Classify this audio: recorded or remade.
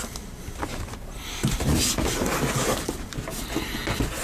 recorded